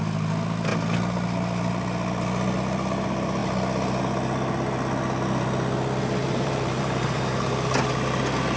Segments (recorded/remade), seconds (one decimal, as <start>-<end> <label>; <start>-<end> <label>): 0.0-6.2 recorded; 6.2-7.9 remade; 7.9-8.6 recorded